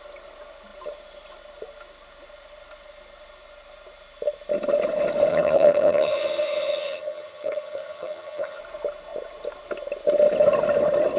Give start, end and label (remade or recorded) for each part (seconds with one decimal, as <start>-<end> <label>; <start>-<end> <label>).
0.0-5.3 recorded; 5.3-8.6 remade; 8.6-11.2 recorded